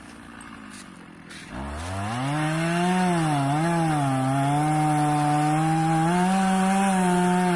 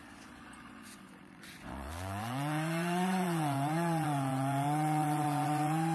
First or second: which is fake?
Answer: second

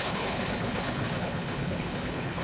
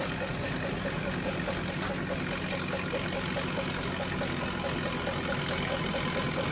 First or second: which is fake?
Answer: first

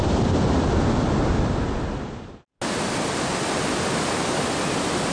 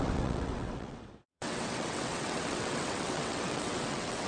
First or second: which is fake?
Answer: second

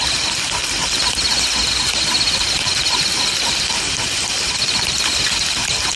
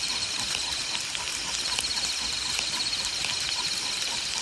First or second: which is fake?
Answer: second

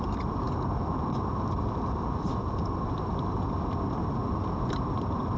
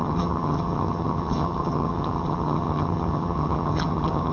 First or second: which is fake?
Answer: second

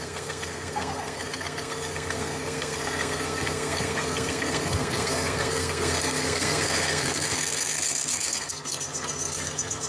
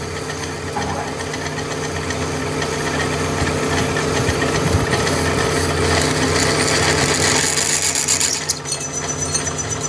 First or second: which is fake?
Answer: first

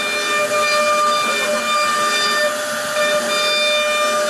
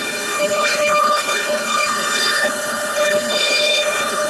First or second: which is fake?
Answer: second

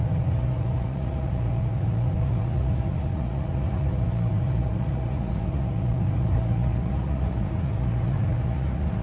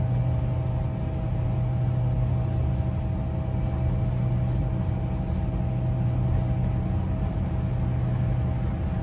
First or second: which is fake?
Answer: first